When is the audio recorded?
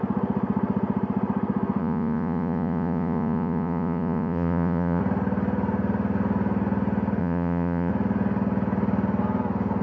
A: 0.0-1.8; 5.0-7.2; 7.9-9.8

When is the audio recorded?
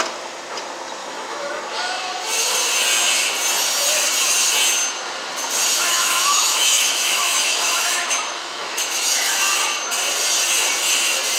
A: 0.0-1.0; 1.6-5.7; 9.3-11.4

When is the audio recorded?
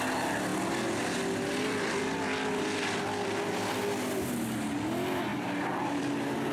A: 0.0-6.5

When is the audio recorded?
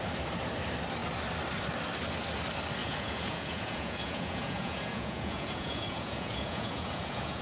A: 0.0-2.8